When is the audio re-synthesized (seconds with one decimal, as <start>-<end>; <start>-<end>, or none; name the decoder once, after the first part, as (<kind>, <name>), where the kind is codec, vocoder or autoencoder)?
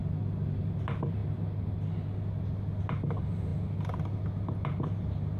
none